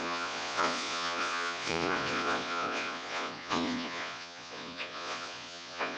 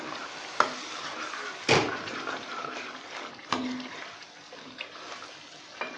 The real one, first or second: second